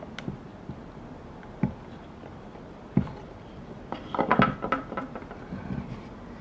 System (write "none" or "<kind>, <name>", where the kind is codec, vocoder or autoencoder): none